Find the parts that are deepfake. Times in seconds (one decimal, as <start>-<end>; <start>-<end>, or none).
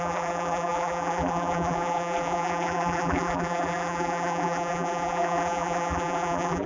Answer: 0.0-6.7